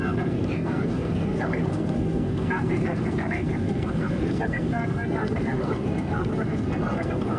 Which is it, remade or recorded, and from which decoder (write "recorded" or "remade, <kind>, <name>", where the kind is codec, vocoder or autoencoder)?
remade, codec, SNAC